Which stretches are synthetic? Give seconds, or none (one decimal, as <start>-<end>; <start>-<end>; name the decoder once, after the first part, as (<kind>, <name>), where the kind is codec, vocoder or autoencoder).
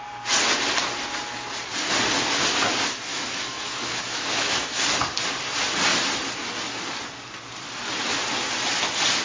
3.1-4.8 (autoencoder, DAC-VAE)